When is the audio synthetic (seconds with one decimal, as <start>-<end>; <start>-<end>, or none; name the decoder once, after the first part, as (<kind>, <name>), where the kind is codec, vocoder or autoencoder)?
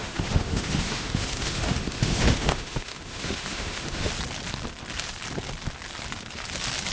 0.0-4.1 (autoencoder, DAC-VAE)